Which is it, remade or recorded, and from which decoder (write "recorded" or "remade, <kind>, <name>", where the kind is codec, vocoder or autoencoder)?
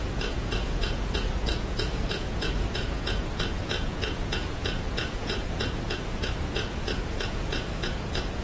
remade, vocoder, Vocos